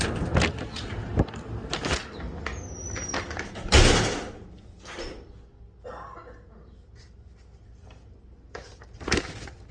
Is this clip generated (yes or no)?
no